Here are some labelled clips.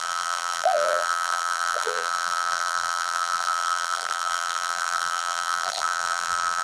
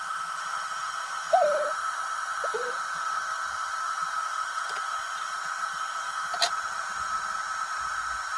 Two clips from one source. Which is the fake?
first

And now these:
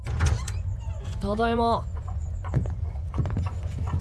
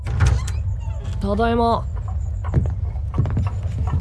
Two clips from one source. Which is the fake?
first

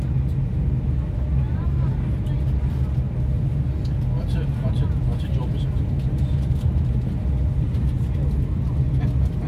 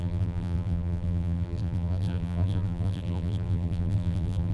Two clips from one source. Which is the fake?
second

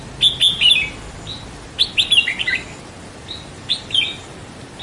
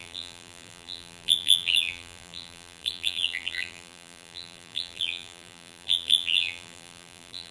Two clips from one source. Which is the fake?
second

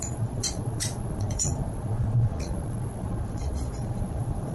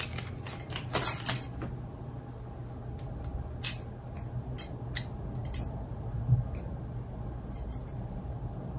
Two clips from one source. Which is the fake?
first